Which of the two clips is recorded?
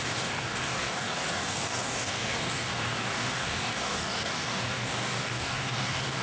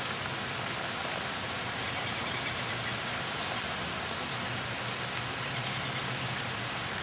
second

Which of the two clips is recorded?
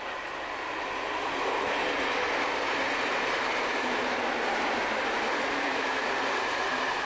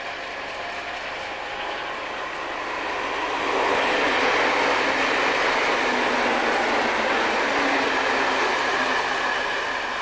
second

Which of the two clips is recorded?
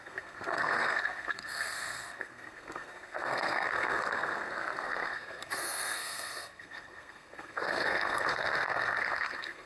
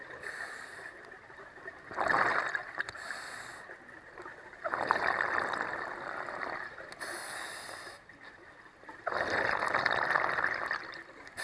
second